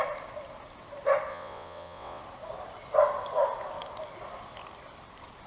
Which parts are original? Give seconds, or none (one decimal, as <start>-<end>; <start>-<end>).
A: 0.0-1.3; 2.2-5.5